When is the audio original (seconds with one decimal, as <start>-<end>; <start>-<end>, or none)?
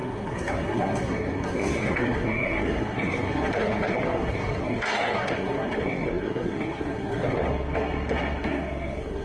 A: none